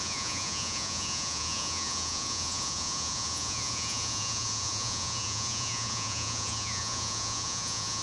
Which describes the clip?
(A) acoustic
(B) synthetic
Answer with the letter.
B